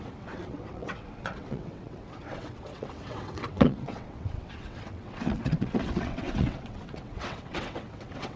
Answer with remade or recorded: remade